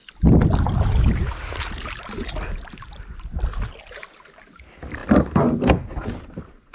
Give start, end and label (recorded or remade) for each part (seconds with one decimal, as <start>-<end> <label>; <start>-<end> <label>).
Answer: 0.0-6.7 recorded